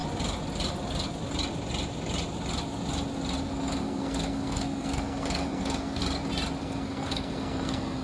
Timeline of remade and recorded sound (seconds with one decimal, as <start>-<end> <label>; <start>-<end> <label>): 0.0-3.4 recorded; 3.4-6.0 remade; 6.0-6.6 recorded; 6.6-8.0 remade